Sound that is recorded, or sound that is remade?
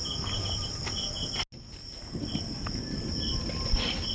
recorded